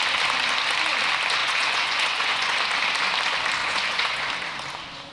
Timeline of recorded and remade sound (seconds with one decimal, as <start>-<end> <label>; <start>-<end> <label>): 0.0-1.4 recorded; 1.4-2.6 remade; 2.6-3.6 recorded; 3.6-4.3 remade; 4.3-5.1 recorded